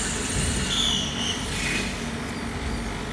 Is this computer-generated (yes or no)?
no